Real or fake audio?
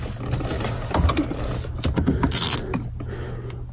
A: real